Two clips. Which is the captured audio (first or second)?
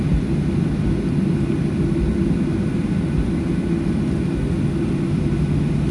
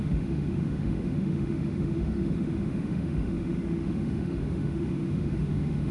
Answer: first